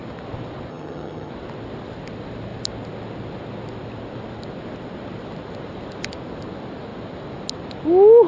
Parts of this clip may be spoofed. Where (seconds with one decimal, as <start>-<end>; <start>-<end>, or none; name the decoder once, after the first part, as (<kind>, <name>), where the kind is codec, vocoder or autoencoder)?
0.7-1.3 (vocoder, HiFi-GAN)